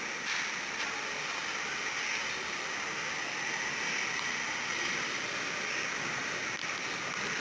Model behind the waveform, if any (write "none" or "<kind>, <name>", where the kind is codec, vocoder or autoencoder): none